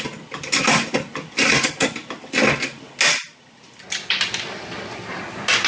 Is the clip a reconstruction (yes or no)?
no